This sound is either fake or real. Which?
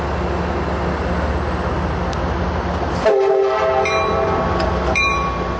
fake